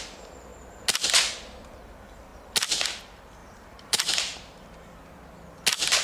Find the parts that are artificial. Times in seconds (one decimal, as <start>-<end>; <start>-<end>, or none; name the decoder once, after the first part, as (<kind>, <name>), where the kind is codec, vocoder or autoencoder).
3.4-5.2 (vocoder, BigVGAN v2)